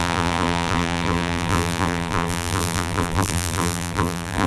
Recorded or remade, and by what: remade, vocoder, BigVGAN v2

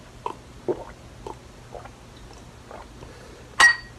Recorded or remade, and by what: recorded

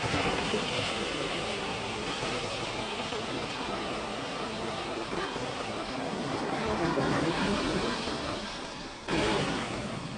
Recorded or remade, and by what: remade, codec, SNAC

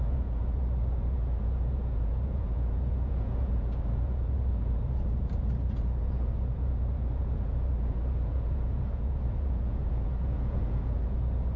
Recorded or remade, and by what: remade, vocoder, Vocos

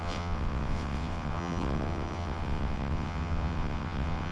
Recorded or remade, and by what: remade, vocoder, WaveNeXt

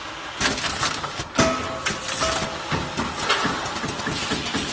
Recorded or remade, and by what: recorded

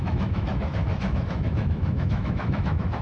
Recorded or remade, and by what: remade, autoencoder, DAC-VAE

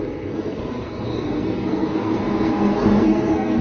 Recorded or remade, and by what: remade, codec, SNAC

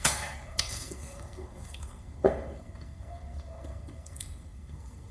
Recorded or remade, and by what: remade, codec, SNAC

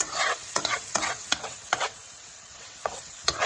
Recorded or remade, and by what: remade, vocoder, WaveNeXt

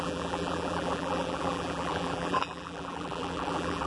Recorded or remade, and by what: remade, vocoder, BigVGAN v2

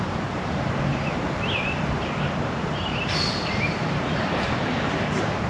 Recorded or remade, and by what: remade, vocoder, BigVGAN v2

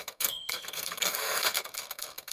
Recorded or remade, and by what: remade, codec, SNAC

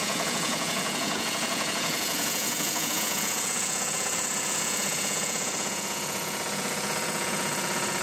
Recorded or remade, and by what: remade, vocoder, Vocos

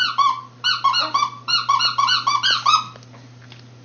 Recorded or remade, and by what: recorded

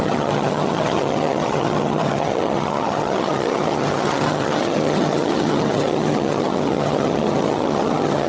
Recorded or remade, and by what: remade, vocoder, HiFi-GAN